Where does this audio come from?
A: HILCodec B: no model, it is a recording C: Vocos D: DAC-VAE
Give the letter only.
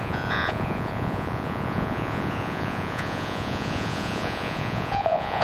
C